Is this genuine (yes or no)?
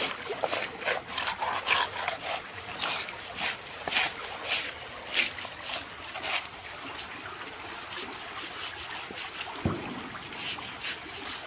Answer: yes